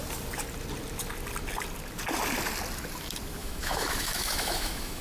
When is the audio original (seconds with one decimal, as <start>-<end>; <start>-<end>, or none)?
0.0-3.4